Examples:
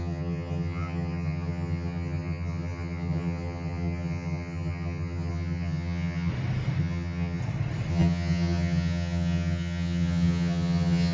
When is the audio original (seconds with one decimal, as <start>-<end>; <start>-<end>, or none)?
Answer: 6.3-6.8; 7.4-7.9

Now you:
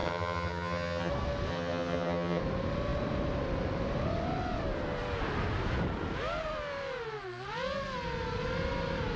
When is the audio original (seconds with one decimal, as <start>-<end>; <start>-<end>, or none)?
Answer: 1.1-1.5; 2.4-9.2

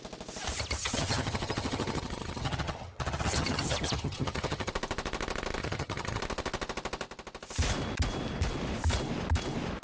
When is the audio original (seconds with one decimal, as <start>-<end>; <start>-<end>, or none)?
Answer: 0.0-0.8; 4.7-5.6; 6.2-9.8